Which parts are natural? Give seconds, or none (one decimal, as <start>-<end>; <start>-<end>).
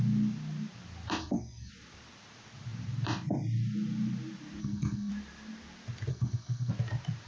0.0-1.2; 1.7-4.6; 5.1-6.1; 6.7-7.3